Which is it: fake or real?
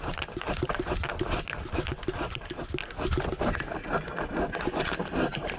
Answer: real